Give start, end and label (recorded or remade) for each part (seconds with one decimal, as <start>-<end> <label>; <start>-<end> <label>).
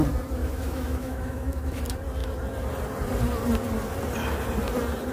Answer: 0.0-0.4 recorded; 0.4-1.8 remade; 1.8-5.1 recorded